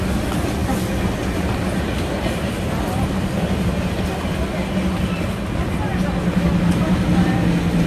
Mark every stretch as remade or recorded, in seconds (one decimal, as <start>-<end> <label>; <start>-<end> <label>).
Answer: 0.0-7.9 recorded